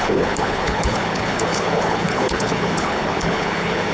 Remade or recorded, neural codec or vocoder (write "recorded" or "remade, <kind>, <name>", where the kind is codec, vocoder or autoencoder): remade, codec, HILCodec